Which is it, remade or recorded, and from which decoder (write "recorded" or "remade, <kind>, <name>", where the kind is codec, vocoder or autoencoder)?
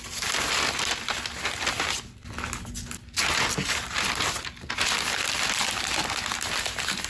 recorded